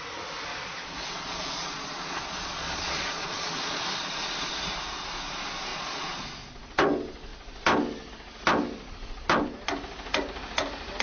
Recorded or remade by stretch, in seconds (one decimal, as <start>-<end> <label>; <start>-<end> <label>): 0.0-0.5 recorded; 0.5-3.8 remade; 3.8-5.7 recorded; 5.7-6.2 remade; 6.2-11.0 recorded